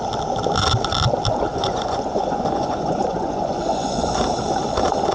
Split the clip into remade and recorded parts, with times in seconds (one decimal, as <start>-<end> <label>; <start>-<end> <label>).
0.0-1.5 recorded; 1.5-4.2 remade; 4.2-5.1 recorded